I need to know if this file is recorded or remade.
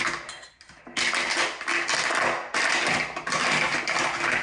recorded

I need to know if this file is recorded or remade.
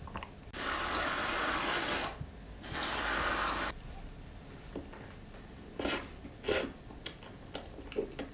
recorded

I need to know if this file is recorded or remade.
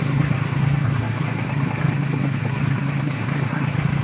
remade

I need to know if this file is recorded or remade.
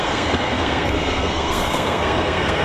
remade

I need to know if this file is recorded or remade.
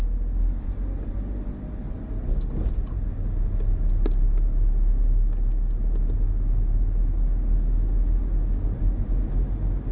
recorded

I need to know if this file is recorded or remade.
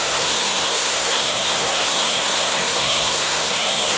remade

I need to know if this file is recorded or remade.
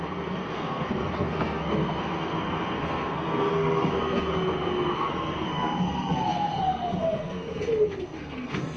remade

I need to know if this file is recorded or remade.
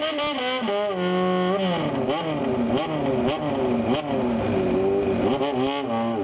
recorded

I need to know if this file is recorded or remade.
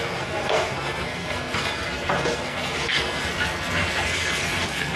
remade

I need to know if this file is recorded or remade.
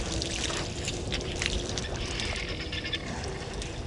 recorded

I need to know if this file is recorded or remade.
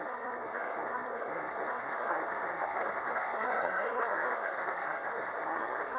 remade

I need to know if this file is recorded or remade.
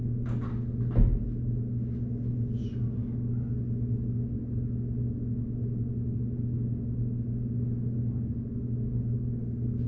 recorded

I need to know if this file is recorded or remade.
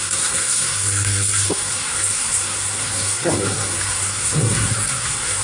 remade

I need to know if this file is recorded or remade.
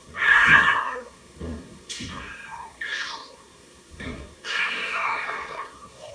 remade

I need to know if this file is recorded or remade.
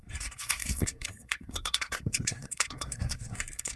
remade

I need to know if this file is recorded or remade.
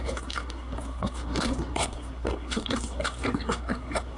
remade